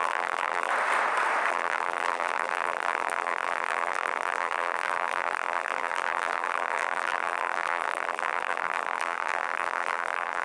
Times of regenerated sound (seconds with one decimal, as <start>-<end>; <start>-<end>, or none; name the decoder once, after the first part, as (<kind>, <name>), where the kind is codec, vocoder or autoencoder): 0.0-0.7 (vocoder, BigVGAN v2); 1.5-10.4